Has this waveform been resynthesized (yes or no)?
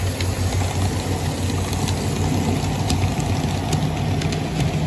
no